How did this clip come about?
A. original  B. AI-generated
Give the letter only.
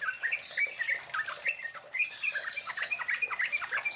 A